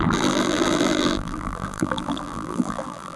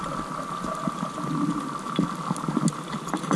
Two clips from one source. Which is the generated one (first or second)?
first